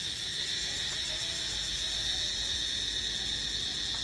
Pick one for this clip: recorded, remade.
recorded